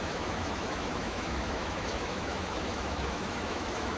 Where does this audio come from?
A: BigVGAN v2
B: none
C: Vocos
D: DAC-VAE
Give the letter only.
D